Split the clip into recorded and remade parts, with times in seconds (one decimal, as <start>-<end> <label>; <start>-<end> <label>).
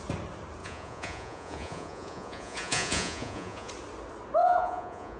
0.0-0.6 recorded; 0.6-3.7 remade; 3.7-4.4 recorded; 4.4-5.2 remade